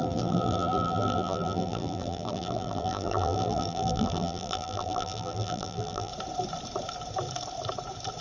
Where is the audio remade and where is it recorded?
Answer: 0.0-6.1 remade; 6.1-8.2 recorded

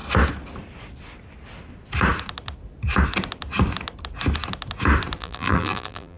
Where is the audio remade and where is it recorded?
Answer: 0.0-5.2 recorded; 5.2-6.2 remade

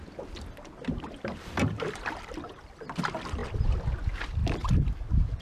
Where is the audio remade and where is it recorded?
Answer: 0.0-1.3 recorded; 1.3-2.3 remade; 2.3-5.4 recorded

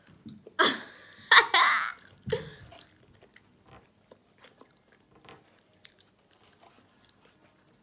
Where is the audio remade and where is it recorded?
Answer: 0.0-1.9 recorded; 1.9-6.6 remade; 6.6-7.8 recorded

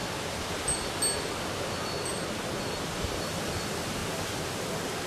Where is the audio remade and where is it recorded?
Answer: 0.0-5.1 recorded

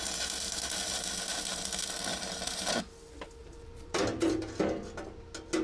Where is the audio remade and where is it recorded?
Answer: 0.0-2.1 recorded; 2.1-2.6 remade; 2.6-3.4 recorded; 3.4-4.4 remade; 4.4-5.6 recorded

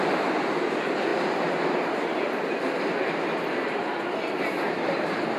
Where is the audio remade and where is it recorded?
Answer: 0.0-5.4 recorded